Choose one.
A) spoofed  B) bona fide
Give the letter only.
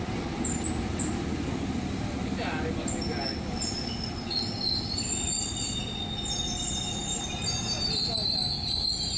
B